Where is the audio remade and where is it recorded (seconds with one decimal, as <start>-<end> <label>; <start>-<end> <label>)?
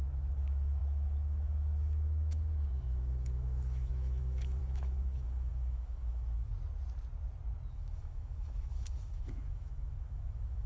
0.0-6.5 remade; 6.5-7.7 recorded; 7.7-10.7 remade